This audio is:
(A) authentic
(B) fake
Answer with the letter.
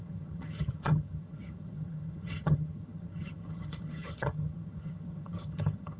B